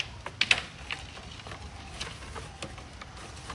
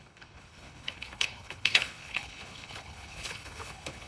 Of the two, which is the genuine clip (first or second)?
first